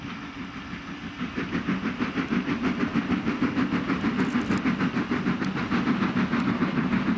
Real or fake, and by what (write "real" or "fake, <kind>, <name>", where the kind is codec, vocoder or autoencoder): real